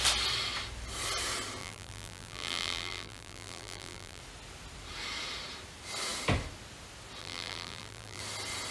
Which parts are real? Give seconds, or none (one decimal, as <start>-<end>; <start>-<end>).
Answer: 0.0-1.6; 4.2-7.2; 8.2-8.7